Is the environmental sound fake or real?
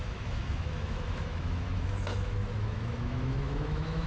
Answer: fake